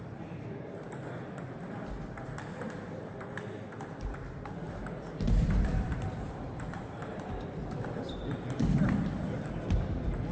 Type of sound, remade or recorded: remade